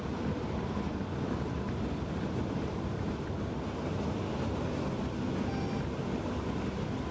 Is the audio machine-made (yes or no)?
no